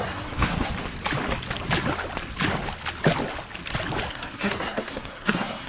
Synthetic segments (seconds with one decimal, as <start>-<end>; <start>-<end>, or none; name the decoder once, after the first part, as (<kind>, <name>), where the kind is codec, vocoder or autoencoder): 0.0-0.7 (codec, SNAC); 4.1-5.7